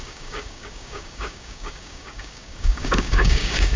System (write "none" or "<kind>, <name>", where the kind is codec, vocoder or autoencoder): codec, DAC